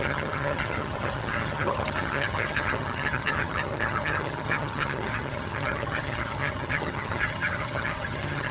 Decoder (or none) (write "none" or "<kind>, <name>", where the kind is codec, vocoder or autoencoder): vocoder, HiFi-GAN